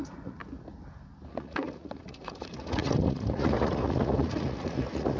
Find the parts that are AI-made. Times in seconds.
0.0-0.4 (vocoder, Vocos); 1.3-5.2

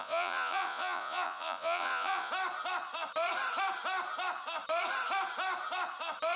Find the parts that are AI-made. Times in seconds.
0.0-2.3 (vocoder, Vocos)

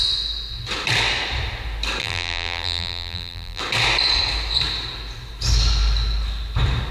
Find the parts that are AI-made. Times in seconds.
2.0-3.6 (vocoder, BigVGAN v2)